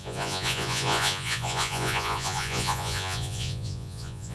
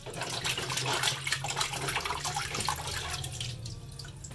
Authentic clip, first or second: second